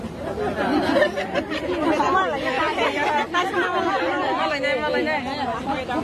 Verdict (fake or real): real